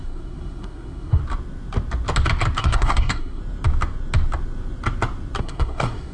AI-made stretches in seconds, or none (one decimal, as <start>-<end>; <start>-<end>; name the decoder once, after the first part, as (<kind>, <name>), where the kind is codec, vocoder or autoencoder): 0.0-1.2 (codec, SNAC); 2.6-3.4; 5.4-6.1